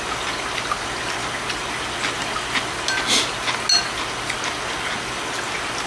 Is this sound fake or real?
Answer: real